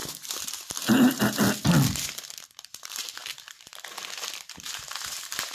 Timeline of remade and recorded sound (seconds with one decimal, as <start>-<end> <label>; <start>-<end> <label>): 0.0-5.5 recorded